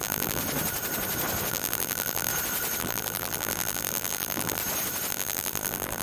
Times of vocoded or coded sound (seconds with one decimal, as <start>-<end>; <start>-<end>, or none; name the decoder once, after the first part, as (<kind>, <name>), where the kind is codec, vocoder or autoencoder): 0.0-0.4 (vocoder, BigVGAN v2); 1.5-2.3; 2.8-4.6; 5.1-6.0